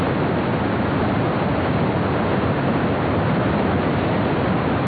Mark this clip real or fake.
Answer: real